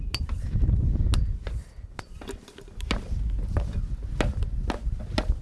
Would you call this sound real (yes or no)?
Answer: yes